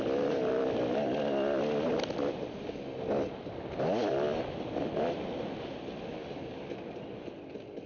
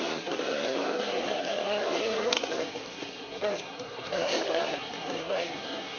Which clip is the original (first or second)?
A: first